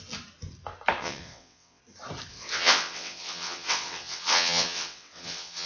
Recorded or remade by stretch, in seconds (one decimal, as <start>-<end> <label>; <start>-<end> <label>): 0.0-1.0 recorded; 1.0-1.8 remade; 1.8-2.3 recorded; 2.3-5.7 remade

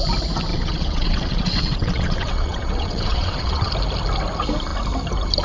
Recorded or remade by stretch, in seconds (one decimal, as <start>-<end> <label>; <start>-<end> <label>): 0.0-0.5 recorded; 0.5-3.7 remade; 3.7-5.4 recorded

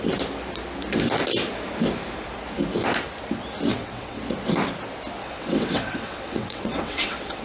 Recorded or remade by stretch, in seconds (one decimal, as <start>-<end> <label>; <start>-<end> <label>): 0.0-3.7 recorded; 3.7-4.2 remade; 4.2-5.2 recorded; 5.2-7.4 remade

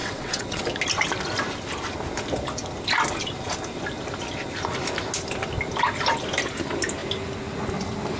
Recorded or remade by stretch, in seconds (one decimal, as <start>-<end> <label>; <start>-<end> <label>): 0.0-0.6 remade; 0.6-8.2 recorded

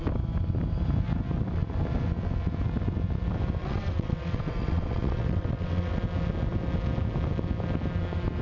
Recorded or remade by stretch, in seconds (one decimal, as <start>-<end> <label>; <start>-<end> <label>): 0.0-3.6 recorded; 3.6-6.0 remade; 6.0-8.4 recorded

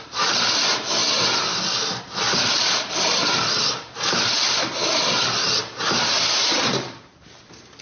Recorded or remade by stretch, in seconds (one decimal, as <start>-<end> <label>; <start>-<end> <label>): 0.0-7.8 recorded